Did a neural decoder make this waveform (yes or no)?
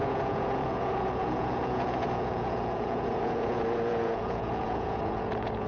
yes